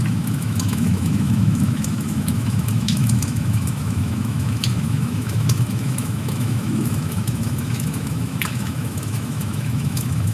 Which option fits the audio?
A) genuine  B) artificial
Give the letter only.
B